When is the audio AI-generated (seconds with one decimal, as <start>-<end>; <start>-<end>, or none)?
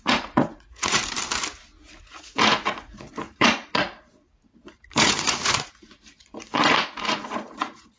0.0-1.0; 2.0-8.0